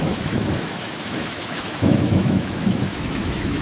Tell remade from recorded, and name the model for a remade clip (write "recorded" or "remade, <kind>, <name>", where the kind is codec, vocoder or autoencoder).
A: remade, autoencoder, DAC-VAE